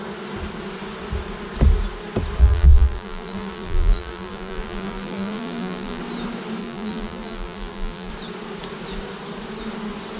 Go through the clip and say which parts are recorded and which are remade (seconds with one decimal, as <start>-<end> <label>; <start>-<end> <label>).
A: 0.0-2.4 recorded; 2.4-6.0 remade; 6.0-6.6 recorded; 6.6-8.1 remade; 8.1-10.2 recorded